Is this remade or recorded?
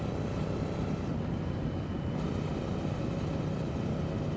recorded